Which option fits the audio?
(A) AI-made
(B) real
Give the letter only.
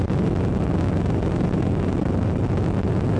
B